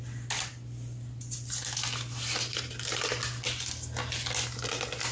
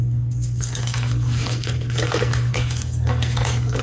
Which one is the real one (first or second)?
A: first